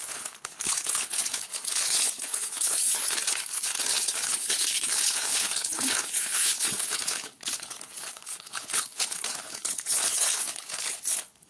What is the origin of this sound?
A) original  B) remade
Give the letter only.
B